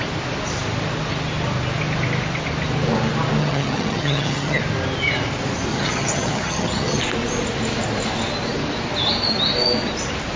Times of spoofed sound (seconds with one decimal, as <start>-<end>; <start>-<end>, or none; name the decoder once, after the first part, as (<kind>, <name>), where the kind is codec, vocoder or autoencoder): 3.4-4.6 (vocoder, HiFi-GAN); 5.7-7.0